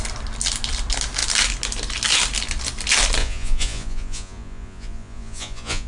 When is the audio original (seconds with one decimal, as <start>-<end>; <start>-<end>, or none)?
0.0-3.2